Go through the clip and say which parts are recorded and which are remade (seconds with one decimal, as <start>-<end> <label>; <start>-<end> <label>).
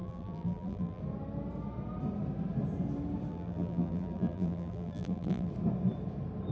0.0-1.0 remade; 1.0-3.3 recorded; 3.3-5.5 remade; 5.5-6.5 recorded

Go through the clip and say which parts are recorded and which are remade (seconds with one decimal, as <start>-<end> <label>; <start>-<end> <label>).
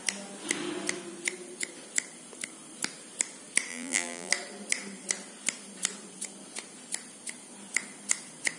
0.0-3.7 recorded; 3.7-4.3 remade; 4.3-8.6 recorded